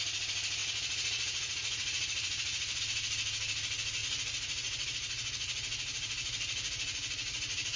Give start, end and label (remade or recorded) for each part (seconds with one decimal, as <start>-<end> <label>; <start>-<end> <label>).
0.0-0.6 recorded; 0.6-2.8 remade; 2.8-4.0 recorded; 4.0-7.8 remade